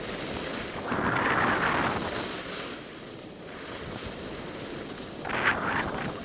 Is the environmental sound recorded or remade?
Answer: recorded